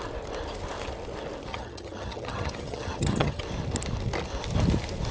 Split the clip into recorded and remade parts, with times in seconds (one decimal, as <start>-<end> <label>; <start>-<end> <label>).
0.0-1.5 recorded; 1.5-3.4 remade; 3.4-5.1 recorded